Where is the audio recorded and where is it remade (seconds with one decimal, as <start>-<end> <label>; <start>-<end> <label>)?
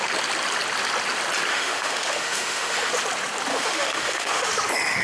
0.0-1.5 recorded; 1.5-2.9 remade; 2.9-3.5 recorded; 3.5-4.5 remade; 4.5-5.0 recorded